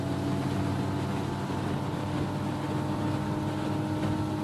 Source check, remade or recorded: recorded